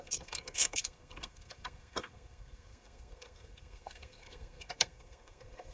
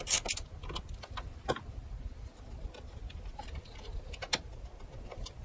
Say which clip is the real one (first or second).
second